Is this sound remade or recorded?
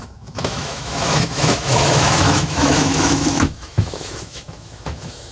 remade